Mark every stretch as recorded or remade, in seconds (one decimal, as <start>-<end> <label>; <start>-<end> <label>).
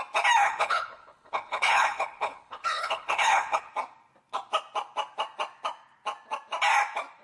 0.0-0.4 recorded; 0.4-3.7 remade; 3.7-7.2 recorded